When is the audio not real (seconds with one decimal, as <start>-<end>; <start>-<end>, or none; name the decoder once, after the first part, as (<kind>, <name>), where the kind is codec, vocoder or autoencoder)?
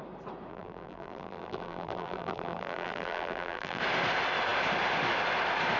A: 0.5-3.8 (vocoder, BigVGAN v2)